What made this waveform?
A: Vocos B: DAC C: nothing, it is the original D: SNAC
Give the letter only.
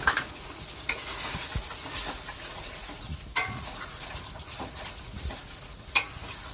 A